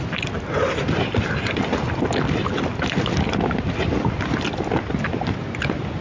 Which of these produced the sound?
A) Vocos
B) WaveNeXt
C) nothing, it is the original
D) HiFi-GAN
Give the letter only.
C